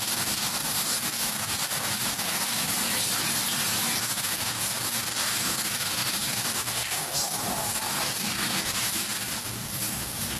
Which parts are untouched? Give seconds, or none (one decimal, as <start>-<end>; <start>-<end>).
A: 2.7-4.0